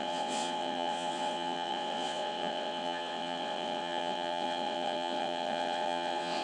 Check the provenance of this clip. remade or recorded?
remade